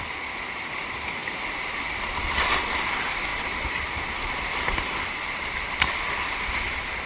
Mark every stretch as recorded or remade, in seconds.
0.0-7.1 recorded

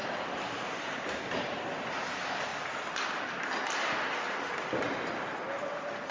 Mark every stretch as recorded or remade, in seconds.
0.0-1.6 remade; 1.6-6.1 recorded

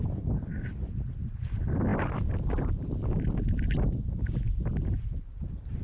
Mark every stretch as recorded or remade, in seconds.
0.0-5.8 recorded

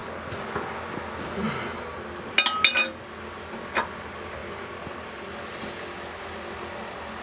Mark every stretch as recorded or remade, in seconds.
0.0-7.2 recorded